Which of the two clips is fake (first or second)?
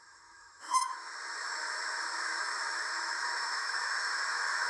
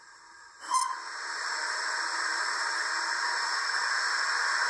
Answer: first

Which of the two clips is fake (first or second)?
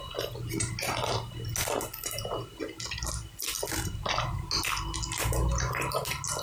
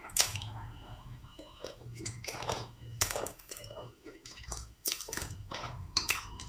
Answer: second